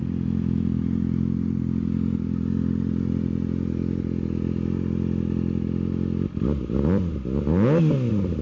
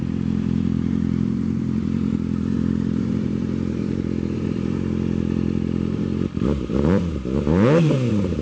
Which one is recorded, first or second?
first